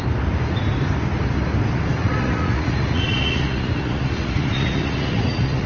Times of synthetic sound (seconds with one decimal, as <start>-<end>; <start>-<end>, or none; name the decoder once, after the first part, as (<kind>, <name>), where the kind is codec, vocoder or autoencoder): 2.0-5.7 (vocoder, Vocos)